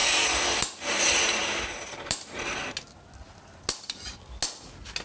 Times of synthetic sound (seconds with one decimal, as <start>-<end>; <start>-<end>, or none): none